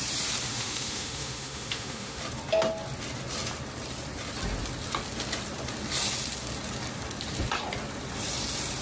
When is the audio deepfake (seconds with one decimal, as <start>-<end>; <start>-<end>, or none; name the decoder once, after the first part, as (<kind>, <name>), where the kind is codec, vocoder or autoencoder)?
0.5-2.2 (autoencoder, DAC-VAE)